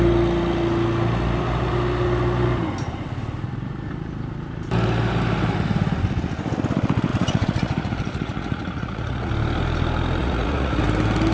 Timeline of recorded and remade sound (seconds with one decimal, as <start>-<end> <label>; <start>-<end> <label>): 0.0-7.1 recorded; 7.1-9.3 remade; 9.3-10.2 recorded; 10.2-10.8 remade; 10.8-11.3 recorded

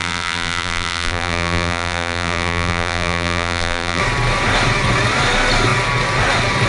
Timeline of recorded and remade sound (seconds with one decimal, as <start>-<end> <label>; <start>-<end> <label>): 0.0-4.0 remade; 4.0-6.7 recorded

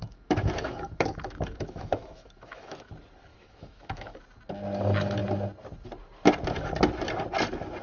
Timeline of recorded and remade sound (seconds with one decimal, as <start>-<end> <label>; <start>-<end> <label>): 0.0-2.9 remade; 2.9-3.3 recorded; 3.3-4.2 remade; 4.2-7.8 recorded

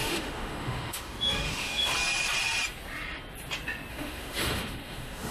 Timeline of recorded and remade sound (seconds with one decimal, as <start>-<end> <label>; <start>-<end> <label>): 0.0-1.9 remade; 1.9-3.9 recorded; 3.9-5.3 remade

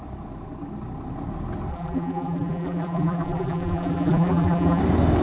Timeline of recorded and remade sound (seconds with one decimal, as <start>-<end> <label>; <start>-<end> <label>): 0.0-1.7 recorded; 1.7-4.8 remade; 4.8-5.2 recorded